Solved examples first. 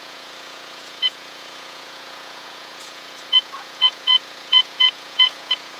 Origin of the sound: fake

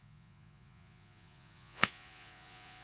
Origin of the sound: fake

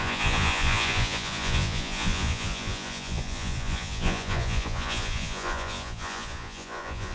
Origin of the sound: fake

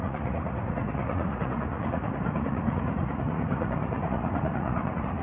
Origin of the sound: fake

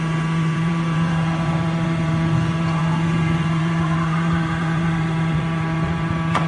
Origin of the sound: fake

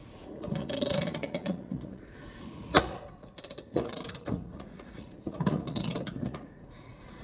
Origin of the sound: fake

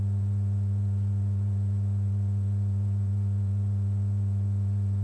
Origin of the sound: fake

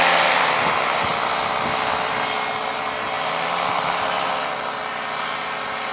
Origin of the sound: real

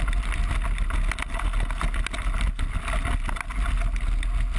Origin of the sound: real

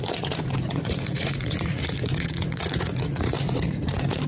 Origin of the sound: fake